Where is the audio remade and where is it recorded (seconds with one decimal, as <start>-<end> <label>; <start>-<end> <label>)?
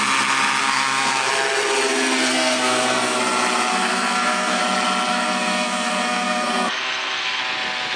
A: 0.0-0.6 recorded; 0.6-1.3 remade; 1.3-2.3 recorded; 2.3-3.2 remade; 3.2-3.7 recorded; 3.7-4.6 remade; 4.6-5.1 recorded; 5.1-7.4 remade; 7.4-8.0 recorded